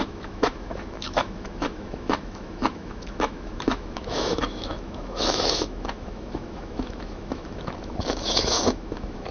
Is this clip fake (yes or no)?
yes